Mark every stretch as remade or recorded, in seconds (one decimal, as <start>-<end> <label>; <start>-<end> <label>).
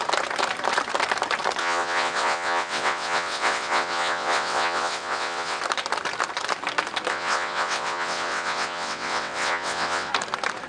0.0-1.6 recorded; 1.6-5.6 remade; 5.6-7.1 recorded; 7.1-10.1 remade; 10.1-10.7 recorded